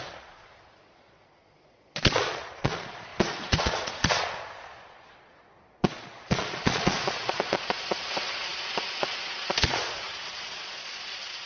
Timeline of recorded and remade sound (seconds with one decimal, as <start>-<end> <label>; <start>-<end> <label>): 0.0-11.5 remade

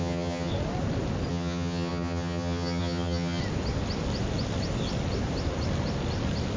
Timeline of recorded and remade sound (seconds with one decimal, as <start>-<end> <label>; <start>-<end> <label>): 0.0-0.5 remade; 0.5-1.3 recorded; 1.3-3.4 remade; 3.4-6.6 recorded

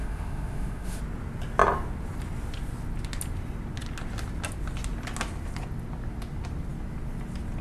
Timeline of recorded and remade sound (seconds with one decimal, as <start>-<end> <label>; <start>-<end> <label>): 0.0-1.0 remade; 1.0-7.6 recorded

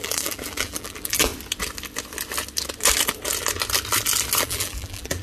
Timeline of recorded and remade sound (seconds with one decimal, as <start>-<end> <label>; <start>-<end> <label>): 0.0-1.3 remade; 1.3-4.4 recorded; 4.4-5.2 remade

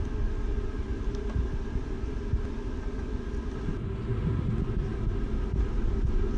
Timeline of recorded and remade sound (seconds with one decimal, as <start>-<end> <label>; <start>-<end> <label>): 0.0-6.4 recorded

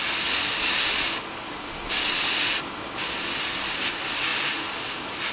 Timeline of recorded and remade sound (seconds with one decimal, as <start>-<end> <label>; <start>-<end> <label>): 0.0-5.3 recorded

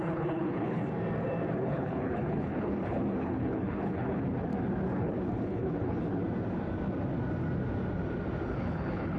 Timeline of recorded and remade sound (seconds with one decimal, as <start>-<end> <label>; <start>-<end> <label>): 0.0-0.8 remade; 0.8-1.5 recorded; 1.5-4.5 remade; 4.5-5.0 recorded; 5.0-6.2 remade; 6.2-8.5 recorded; 8.5-9.2 remade

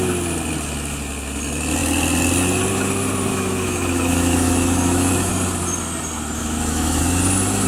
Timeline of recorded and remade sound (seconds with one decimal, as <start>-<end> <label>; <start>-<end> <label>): 0.0-3.3 recorded; 3.3-5.3 remade; 5.3-6.4 recorded; 6.4-7.0 remade; 7.0-7.7 recorded